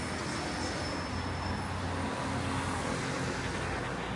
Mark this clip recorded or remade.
recorded